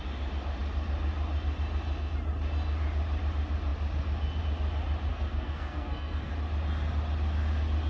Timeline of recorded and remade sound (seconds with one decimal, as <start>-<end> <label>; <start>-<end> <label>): 0.0-5.1 recorded; 5.1-6.3 remade; 6.3-7.9 recorded